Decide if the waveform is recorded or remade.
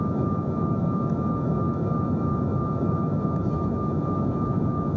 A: remade